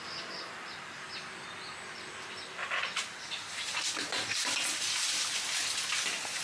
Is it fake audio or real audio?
real